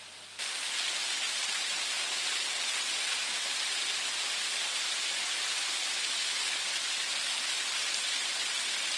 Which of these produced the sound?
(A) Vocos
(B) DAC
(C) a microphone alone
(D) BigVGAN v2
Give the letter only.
C